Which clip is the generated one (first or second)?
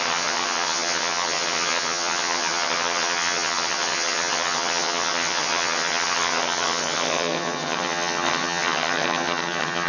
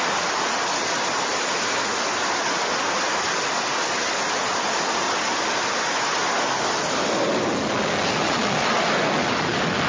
first